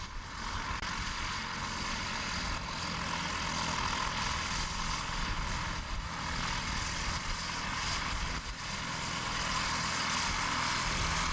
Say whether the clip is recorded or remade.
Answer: recorded